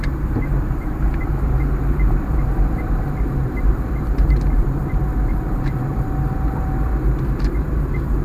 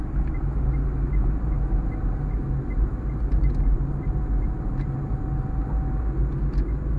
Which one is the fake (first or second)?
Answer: first